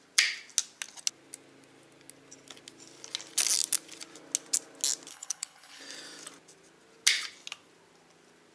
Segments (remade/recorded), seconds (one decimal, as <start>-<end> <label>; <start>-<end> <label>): 0.0-5.1 recorded; 5.1-5.8 remade; 5.8-8.5 recorded